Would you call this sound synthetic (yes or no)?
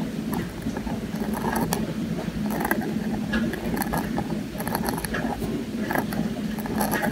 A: no